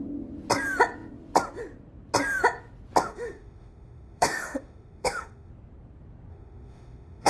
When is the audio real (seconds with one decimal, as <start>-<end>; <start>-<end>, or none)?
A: 0.0-3.0; 5.5-6.3

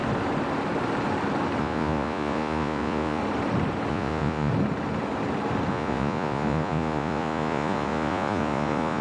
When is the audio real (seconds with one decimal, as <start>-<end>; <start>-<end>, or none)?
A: 0.0-1.6; 3.2-3.9; 4.5-5.7

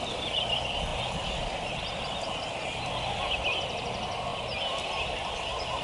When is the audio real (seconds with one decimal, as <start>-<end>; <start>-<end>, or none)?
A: 0.0-5.8

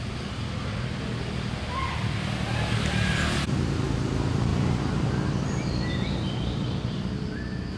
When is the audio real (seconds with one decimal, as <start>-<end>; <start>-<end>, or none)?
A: 0.0-7.8